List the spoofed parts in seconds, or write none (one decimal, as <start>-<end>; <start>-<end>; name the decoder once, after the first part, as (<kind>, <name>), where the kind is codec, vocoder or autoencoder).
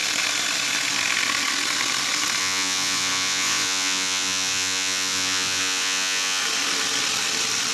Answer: 2.4-6.4 (vocoder, Vocos)